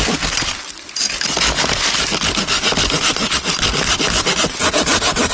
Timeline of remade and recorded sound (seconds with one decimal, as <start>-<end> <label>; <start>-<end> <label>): 0.0-5.3 recorded